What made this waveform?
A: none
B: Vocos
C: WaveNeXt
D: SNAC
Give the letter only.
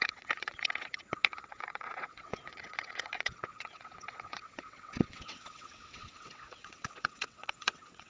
C